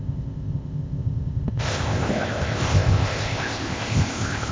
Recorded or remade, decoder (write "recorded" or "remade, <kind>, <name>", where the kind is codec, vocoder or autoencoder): remade, codec, ZipCodec